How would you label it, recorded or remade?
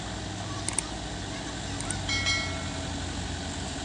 recorded